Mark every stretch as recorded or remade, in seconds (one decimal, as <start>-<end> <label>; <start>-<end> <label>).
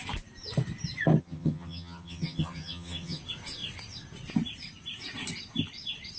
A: 0.0-1.2 recorded; 1.2-3.2 remade; 3.2-6.2 recorded